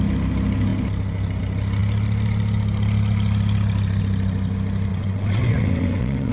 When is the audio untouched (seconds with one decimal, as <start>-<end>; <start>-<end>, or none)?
0.0-4.9